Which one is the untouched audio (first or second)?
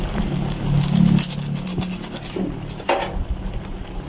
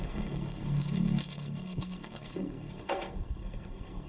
first